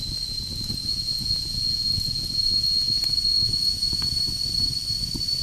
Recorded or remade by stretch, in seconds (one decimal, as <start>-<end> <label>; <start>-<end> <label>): 0.0-0.8 recorded; 0.8-4.0 remade; 4.0-5.4 recorded